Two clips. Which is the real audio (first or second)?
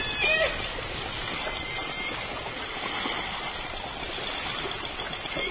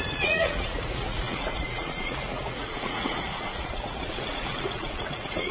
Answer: first